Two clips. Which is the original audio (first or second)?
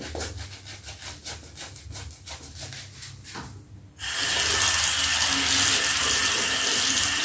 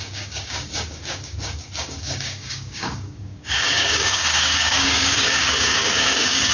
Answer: first